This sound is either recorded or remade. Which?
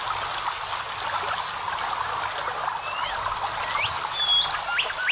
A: recorded